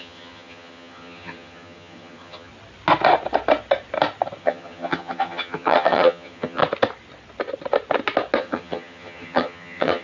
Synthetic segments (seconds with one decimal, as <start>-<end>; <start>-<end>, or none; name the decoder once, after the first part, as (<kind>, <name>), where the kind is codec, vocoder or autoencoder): 0.0-2.5 (vocoder, HiFi-GAN); 4.4-6.6; 8.4-10.0